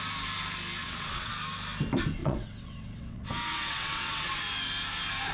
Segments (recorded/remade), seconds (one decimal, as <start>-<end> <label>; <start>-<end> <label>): 0.0-0.8 recorded; 0.8-1.3 remade; 1.3-2.2 recorded; 2.2-4.4 remade; 4.4-5.3 recorded